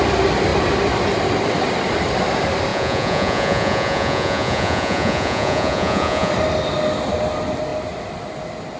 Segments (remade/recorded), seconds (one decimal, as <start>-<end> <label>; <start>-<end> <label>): 0.0-2.7 recorded; 2.7-6.3 remade; 6.3-8.8 recorded